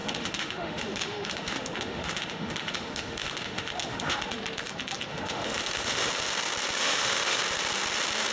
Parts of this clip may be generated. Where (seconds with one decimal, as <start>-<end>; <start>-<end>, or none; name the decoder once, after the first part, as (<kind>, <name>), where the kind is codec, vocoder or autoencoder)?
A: 0.0-4.3 (autoencoder, DAC-VAE); 5.1-6.1; 6.8-7.4